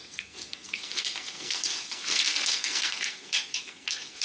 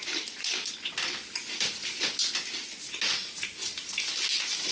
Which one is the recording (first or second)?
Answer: second